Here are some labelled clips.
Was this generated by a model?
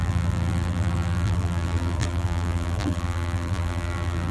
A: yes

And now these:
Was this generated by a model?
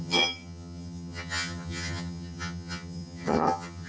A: yes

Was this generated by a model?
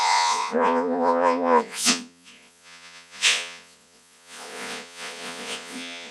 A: yes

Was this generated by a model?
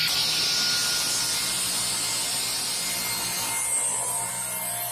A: no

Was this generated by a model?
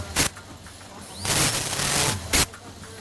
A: no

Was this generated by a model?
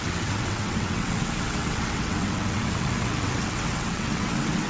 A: yes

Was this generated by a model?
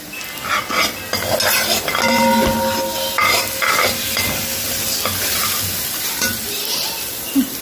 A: no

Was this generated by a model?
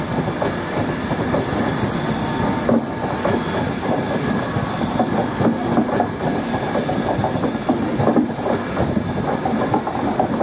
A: no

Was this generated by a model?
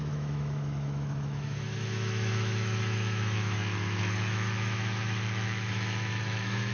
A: yes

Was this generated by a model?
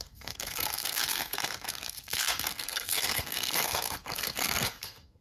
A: yes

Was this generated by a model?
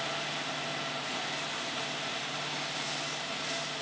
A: no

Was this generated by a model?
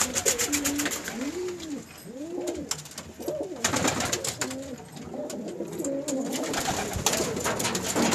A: no